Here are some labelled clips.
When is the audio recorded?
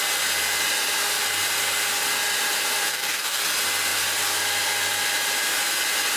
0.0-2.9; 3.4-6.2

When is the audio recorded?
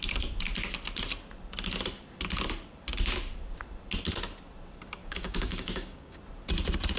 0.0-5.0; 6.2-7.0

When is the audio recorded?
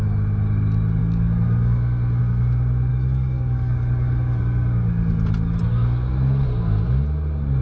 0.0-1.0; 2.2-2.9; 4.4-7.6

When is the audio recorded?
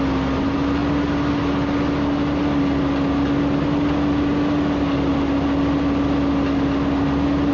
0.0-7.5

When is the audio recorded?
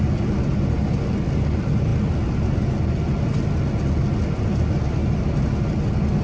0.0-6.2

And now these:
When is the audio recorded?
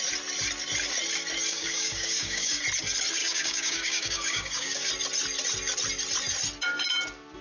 0.0-1.5; 2.6-3.2; 4.9-7.4